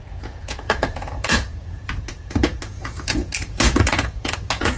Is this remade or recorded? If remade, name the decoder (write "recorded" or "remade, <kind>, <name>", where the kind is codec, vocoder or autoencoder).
remade, vocoder, Vocos